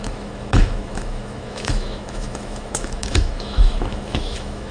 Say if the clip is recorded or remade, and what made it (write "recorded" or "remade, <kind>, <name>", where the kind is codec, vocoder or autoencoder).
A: remade, autoencoder, DAC-VAE